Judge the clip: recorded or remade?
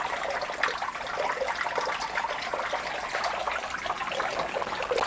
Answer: recorded